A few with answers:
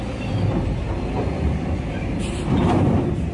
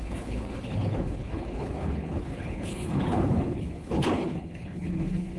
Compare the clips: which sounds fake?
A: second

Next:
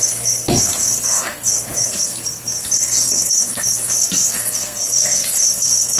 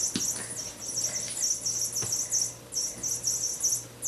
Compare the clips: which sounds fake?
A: first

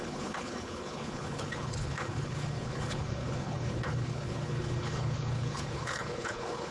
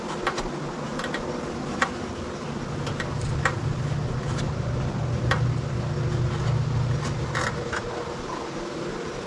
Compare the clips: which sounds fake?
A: first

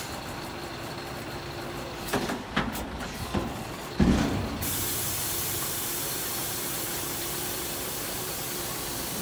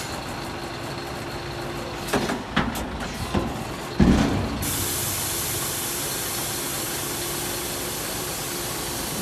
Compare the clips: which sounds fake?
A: first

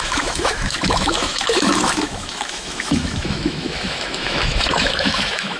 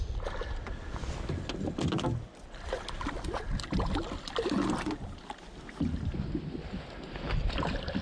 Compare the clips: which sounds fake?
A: first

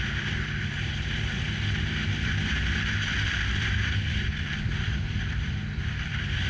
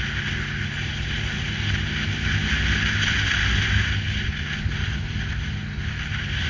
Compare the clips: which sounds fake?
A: first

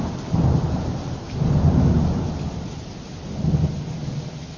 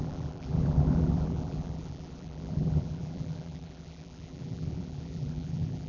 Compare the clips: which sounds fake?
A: second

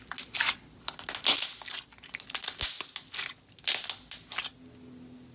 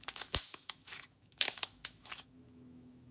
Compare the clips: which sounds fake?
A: second